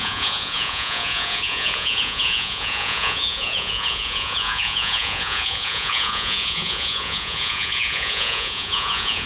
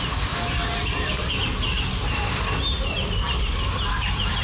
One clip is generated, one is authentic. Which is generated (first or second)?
first